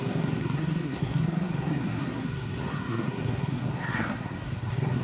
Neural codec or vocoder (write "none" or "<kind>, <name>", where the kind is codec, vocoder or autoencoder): codec, SNAC